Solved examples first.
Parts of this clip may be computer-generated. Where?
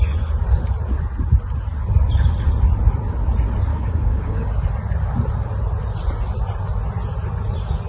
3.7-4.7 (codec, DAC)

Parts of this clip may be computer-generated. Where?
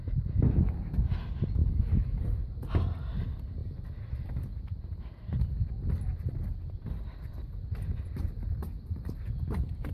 1.6-2.2 (codec, DAC)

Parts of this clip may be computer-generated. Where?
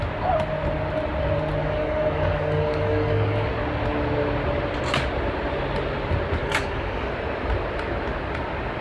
1.6-3.5 (codec, DAC); 6.4-7.1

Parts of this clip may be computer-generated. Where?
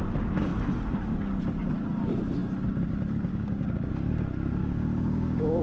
3.3-3.9 (codec, DAC); 4.6-5.6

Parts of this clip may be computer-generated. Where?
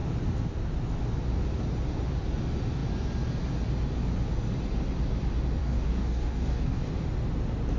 5.6-6.8 (codec, DAC)